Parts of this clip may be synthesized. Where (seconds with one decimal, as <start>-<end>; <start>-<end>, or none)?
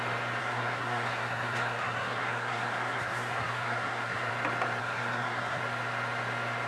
0.4-4.3; 4.8-5.6